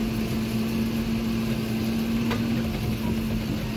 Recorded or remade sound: recorded